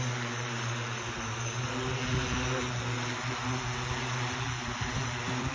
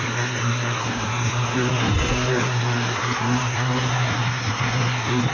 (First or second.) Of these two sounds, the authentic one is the first